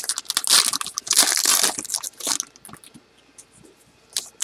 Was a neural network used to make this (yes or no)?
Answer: no